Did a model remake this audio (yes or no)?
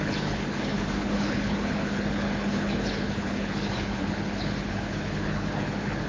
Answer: yes